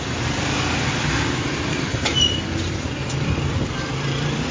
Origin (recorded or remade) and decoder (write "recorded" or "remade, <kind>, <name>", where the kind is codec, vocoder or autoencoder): remade, vocoder, BigVGAN v2